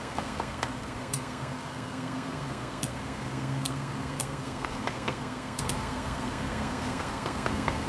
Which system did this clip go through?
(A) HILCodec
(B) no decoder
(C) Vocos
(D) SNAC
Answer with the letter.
D